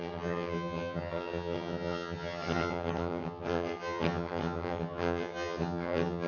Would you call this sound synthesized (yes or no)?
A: yes